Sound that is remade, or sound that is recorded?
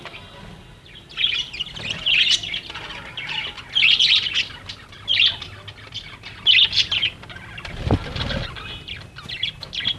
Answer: recorded